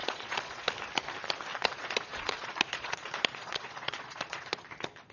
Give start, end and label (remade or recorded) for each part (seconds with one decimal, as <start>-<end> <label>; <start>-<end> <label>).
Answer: 0.0-0.7 remade; 0.7-1.5 recorded; 1.5-4.6 remade; 4.6-5.1 recorded